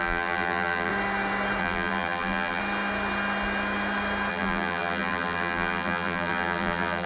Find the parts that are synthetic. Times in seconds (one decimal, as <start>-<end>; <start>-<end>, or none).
0.0-0.9; 1.6-2.6; 4.3-7.1

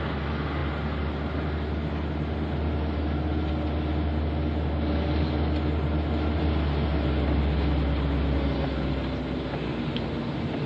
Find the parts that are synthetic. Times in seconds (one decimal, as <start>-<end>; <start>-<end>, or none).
none

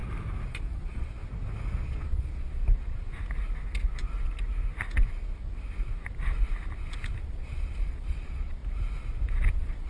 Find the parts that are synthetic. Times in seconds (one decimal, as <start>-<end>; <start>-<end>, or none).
0.5-1.2; 1.8-2.6; 7.2-8.6; 9.5-9.9

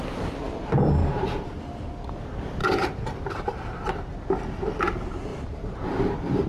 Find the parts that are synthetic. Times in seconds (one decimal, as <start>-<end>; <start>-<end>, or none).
1.0-1.6; 2.6-3.9; 5.3-6.5